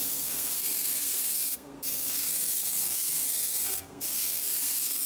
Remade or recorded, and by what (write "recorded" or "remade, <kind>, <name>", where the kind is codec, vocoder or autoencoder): remade, codec, SNAC